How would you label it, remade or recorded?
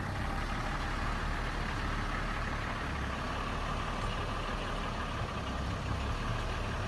recorded